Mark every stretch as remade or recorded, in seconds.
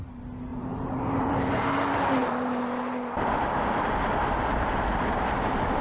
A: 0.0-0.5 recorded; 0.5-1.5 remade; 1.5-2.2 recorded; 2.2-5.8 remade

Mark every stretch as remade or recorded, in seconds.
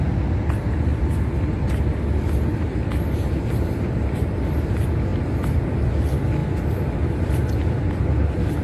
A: 0.0-8.6 recorded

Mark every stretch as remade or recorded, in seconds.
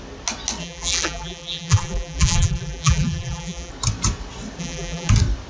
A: 0.0-0.6 recorded; 0.6-3.7 remade; 3.7-4.6 recorded; 4.6-5.1 remade; 5.1-5.5 recorded